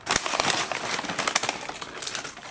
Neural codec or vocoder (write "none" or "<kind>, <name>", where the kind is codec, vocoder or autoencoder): none